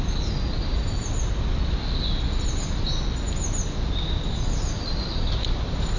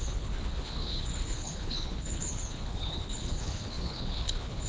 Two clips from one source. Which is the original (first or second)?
first